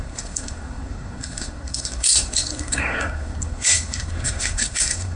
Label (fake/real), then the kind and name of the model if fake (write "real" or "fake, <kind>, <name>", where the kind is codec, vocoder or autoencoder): fake, codec, SNAC